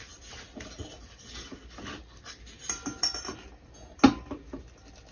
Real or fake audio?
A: real